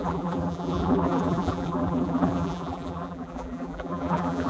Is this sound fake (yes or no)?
yes